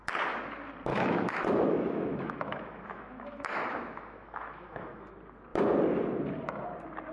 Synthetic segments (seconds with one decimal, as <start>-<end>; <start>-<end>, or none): 0.9-5.1